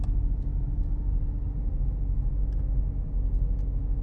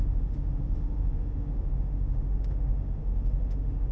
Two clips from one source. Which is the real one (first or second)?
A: first